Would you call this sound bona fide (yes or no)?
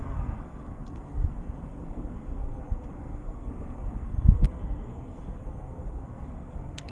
no